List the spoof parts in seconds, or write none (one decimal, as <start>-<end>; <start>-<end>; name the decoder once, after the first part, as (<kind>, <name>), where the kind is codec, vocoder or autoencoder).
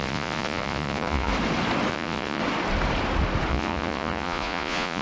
0.0-1.3 (vocoder, Vocos); 1.9-2.4; 3.5-5.0